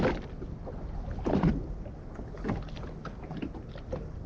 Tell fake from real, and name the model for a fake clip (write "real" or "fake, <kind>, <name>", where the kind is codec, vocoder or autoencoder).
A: real